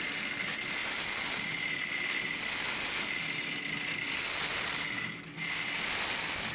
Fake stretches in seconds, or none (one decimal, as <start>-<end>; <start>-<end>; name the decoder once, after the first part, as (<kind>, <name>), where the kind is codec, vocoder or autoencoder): none

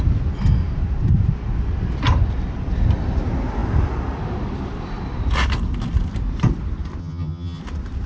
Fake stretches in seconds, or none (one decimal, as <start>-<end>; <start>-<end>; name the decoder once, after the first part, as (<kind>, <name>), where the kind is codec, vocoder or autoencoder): 7.0-7.6 (vocoder, HiFi-GAN)

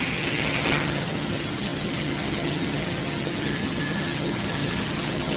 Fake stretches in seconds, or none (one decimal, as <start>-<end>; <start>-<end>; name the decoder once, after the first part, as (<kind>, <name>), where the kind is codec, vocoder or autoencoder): 0.0-5.4 (vocoder, HiFi-GAN)